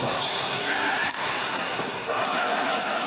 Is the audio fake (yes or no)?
yes